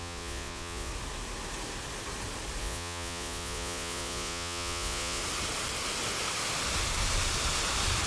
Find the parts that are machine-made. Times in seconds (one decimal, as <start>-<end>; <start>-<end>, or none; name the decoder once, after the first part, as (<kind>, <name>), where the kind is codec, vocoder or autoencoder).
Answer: 0.0-0.9 (vocoder, Vocos); 2.6-5.2